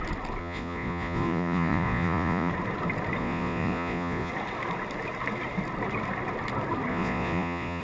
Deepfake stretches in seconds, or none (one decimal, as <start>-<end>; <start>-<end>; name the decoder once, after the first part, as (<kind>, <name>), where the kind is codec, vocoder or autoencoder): 0.4-2.5 (vocoder, Vocos); 3.2-4.3; 6.9-7.8

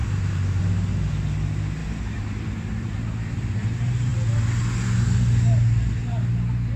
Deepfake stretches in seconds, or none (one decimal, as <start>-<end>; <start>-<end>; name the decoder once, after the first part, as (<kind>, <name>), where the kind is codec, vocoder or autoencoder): 0.0-0.6 (vocoder, BigVGAN v2); 1.8-3.0

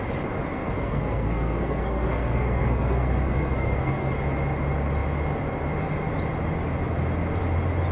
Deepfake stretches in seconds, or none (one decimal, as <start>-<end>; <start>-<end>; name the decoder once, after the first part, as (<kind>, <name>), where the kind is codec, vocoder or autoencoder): 0.5-4.1 (codec, SNAC)

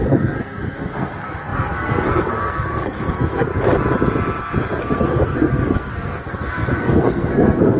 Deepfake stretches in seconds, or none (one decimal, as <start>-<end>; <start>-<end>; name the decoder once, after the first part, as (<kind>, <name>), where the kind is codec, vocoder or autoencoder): 0.0-3.5 (codec, SNAC); 4.8-7.8

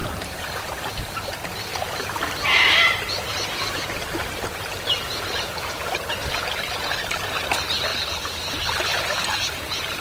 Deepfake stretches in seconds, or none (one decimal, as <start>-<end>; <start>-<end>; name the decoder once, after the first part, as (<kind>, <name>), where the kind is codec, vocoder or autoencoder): 0.0-0.9 (vocoder, BigVGAN v2); 1.7-6.6; 8.9-10.0